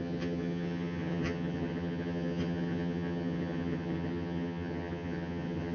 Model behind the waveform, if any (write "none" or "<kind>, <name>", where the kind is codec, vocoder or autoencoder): vocoder, HiFi-GAN